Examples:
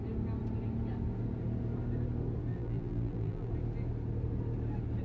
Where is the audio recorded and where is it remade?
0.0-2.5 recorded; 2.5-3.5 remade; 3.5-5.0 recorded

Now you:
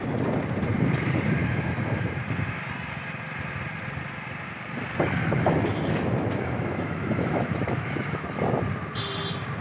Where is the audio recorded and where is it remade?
0.0-1.4 recorded; 1.4-2.1 remade; 2.1-5.2 recorded; 5.2-8.4 remade; 8.4-9.6 recorded

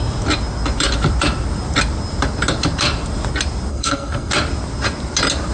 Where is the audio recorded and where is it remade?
0.0-3.7 recorded; 3.7-4.3 remade; 4.3-5.5 recorded

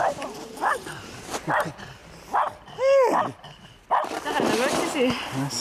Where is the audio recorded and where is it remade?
0.0-2.0 remade; 2.0-5.6 recorded